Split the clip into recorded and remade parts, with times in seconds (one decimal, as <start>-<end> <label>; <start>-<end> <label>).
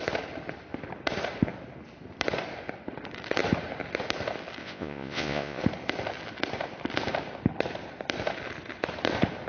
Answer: 0.0-4.6 recorded; 4.6-5.6 remade; 5.6-9.5 recorded